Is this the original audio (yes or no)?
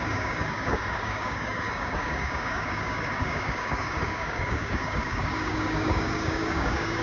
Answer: no